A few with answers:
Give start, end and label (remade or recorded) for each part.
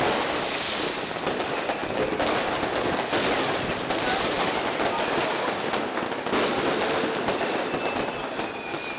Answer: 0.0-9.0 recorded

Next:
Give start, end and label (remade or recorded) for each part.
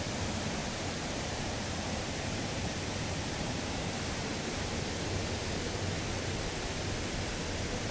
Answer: 0.0-0.6 recorded; 0.6-4.7 remade; 4.7-7.9 recorded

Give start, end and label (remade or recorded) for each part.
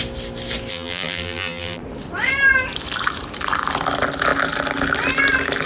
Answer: 0.0-0.7 recorded; 0.7-1.8 remade; 1.8-5.7 recorded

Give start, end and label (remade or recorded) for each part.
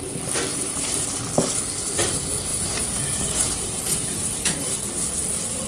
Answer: 0.0-0.5 recorded; 0.5-1.2 remade; 1.2-2.5 recorded; 2.5-4.6 remade; 4.6-5.7 recorded